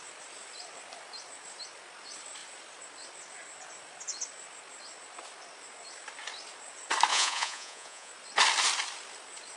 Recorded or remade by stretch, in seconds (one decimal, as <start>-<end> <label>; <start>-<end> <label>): 0.0-7.1 recorded; 7.1-8.1 remade; 8.1-9.6 recorded